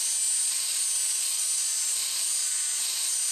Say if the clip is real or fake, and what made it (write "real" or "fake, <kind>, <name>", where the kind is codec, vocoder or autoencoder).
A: real